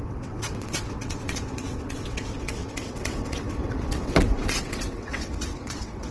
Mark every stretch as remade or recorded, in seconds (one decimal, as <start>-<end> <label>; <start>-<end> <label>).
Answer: 0.0-6.1 remade